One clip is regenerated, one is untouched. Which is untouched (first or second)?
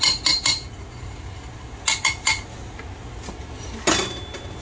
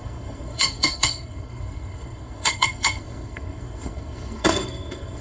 first